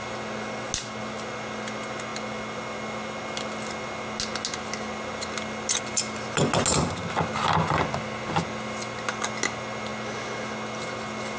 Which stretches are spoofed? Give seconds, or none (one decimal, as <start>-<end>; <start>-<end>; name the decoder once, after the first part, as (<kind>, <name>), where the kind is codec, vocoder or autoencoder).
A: none